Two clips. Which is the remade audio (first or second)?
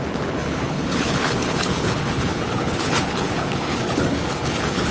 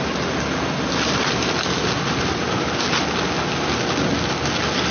first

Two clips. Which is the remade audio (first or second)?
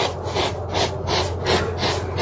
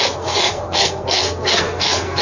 second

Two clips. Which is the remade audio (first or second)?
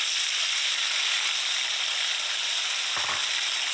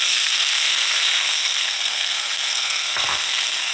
second